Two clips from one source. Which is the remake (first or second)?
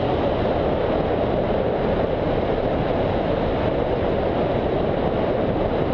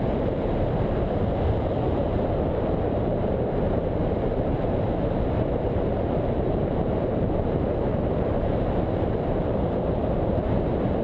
second